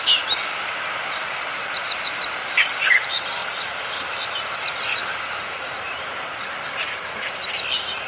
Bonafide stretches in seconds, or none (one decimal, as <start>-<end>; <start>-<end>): 0.0-8.1